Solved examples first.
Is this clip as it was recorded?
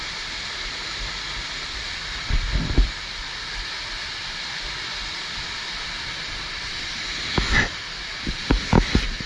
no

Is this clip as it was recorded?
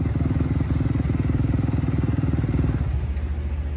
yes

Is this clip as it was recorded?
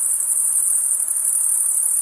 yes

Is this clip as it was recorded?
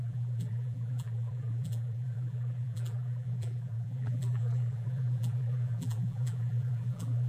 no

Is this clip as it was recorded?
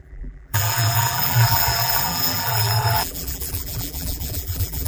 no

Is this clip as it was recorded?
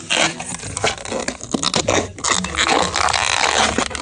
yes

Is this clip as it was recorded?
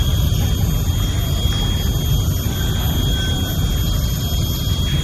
yes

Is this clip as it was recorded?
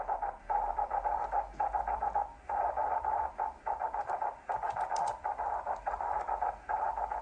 no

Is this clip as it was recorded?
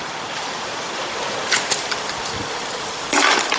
no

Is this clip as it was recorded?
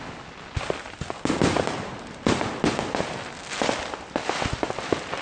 yes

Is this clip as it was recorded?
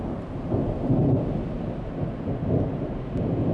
yes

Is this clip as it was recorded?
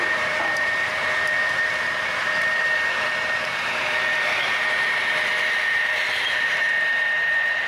no